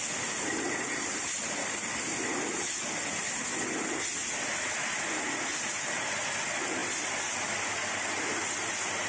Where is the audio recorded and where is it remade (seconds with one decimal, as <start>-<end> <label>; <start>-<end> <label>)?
0.0-9.1 recorded